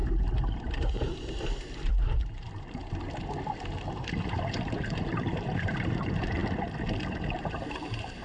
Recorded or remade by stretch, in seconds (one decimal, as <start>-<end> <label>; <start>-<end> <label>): 0.0-2.8 remade; 2.8-4.3 recorded; 4.3-6.4 remade; 6.4-7.4 recorded; 7.4-8.2 remade